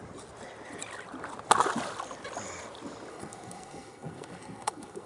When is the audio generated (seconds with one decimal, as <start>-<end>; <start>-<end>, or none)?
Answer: 3.1-5.1

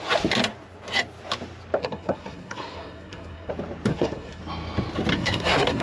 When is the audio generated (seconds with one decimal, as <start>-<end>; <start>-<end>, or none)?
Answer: 1.8-3.5; 3.9-4.4; 5.1-5.8

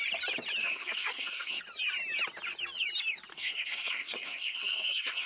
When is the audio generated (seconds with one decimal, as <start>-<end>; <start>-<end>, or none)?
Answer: 0.6-1.6; 3.3-5.3